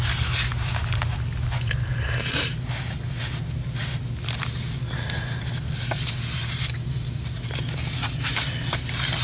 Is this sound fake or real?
real